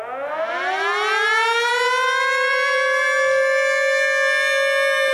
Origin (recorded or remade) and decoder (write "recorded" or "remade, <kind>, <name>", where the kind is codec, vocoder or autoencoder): recorded